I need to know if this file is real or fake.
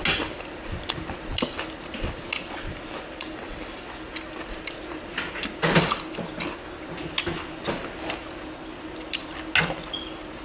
real